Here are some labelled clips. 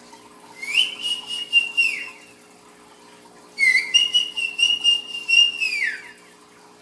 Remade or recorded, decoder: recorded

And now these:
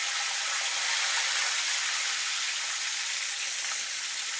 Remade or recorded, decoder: recorded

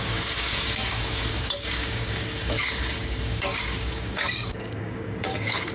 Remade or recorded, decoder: remade, codec, DAC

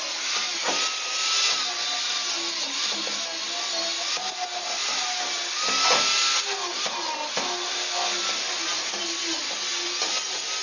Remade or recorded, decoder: recorded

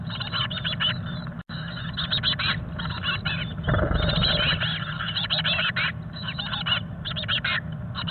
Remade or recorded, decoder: recorded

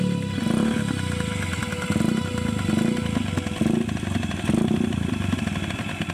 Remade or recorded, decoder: recorded